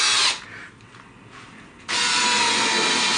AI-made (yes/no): no